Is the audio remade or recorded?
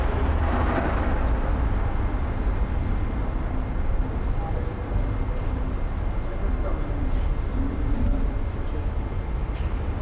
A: recorded